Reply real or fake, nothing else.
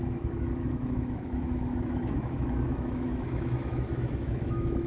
fake